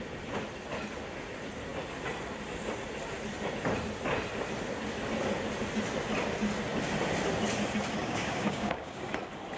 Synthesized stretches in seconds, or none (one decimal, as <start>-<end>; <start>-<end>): 8.0-9.0